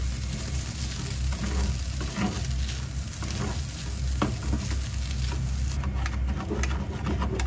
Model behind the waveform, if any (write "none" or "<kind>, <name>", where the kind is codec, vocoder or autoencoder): none